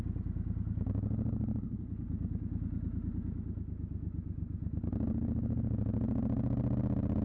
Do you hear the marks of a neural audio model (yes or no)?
no